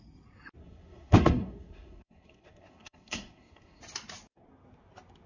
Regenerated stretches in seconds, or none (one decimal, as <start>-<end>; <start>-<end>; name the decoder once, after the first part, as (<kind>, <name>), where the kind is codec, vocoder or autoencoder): 0.6-3.8 (codec, SNAC)